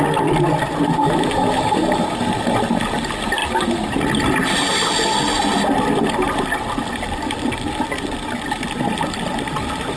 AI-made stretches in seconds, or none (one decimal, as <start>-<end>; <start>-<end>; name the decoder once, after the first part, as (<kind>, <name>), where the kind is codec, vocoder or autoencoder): none

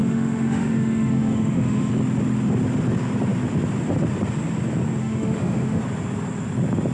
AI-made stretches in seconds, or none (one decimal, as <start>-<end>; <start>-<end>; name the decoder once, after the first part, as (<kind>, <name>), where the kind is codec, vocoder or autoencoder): 0.0-1.9 (autoencoder, DAC-VAE); 5.0-5.8

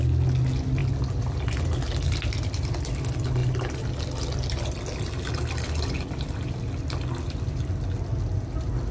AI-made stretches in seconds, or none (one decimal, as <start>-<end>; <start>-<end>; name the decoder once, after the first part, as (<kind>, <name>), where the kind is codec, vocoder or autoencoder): none

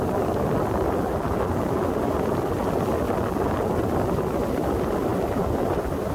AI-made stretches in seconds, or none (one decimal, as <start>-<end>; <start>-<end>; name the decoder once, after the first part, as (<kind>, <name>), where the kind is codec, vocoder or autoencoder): none

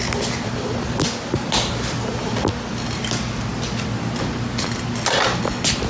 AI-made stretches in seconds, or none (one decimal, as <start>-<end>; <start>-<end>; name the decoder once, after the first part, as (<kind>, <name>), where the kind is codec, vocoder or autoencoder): none

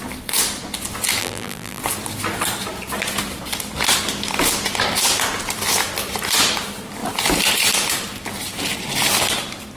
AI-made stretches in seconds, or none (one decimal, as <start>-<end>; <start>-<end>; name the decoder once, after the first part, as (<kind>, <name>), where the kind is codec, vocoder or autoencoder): 1.2-1.8 (vocoder, BigVGAN v2)